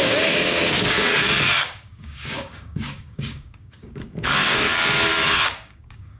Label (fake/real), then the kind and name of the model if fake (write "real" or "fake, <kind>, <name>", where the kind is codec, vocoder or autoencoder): fake, codec, DAC